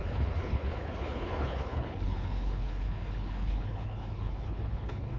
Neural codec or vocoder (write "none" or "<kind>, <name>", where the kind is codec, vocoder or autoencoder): codec, HILCodec